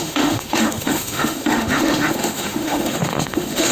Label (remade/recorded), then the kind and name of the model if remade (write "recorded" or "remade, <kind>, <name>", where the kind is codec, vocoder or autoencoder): remade, autoencoder, DAC-VAE